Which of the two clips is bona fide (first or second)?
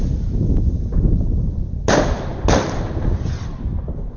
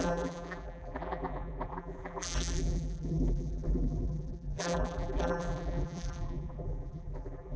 first